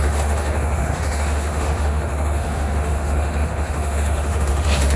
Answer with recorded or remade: remade